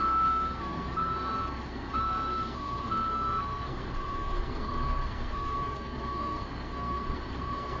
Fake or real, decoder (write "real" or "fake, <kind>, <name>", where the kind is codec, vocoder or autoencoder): fake, codec, SNAC